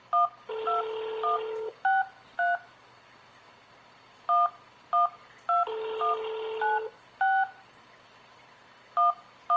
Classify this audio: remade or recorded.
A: recorded